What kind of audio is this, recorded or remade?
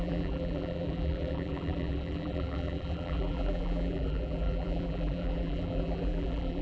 remade